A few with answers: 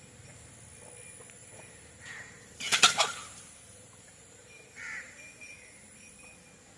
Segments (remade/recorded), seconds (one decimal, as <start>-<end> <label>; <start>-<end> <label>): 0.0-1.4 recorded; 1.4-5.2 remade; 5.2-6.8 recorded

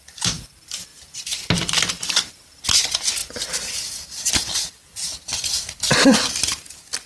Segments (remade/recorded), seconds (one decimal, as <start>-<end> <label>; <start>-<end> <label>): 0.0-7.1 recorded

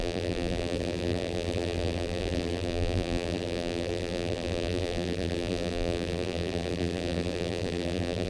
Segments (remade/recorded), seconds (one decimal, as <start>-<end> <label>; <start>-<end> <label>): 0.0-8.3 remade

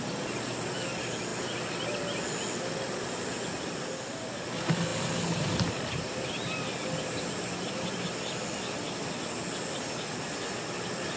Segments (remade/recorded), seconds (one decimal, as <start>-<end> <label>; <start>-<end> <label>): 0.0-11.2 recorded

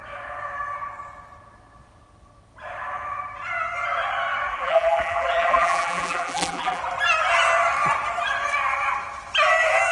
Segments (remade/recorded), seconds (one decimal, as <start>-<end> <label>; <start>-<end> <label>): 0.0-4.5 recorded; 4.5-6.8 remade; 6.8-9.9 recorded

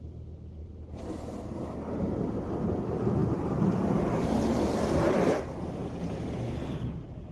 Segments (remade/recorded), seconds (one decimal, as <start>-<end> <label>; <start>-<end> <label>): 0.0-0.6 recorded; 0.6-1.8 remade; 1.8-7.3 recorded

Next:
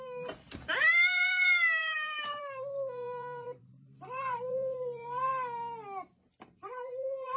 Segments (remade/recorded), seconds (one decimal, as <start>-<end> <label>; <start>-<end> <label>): 0.0-5.3 remade; 5.3-6.3 recorded; 6.3-7.4 remade

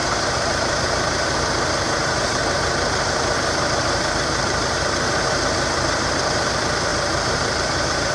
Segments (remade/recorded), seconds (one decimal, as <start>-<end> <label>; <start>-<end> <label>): 0.0-2.4 remade; 2.4-2.9 recorded; 2.9-8.1 remade